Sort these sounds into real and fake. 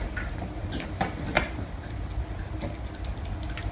real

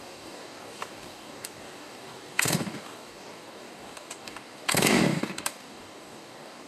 fake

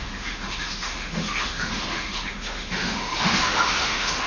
fake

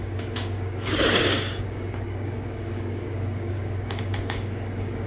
fake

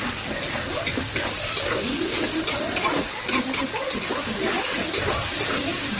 real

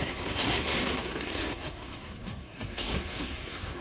fake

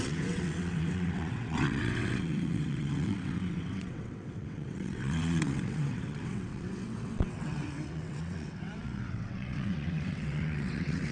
fake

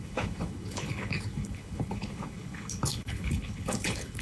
fake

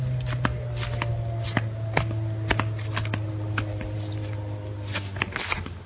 real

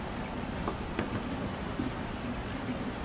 real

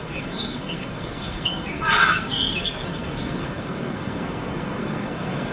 fake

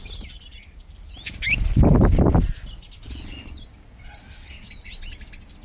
real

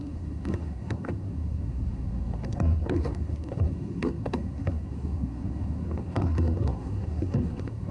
fake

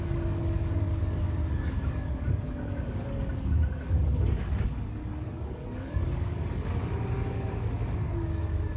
fake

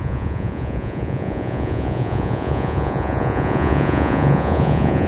fake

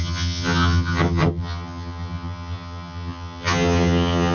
fake